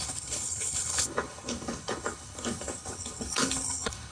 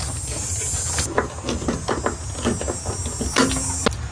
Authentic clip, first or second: second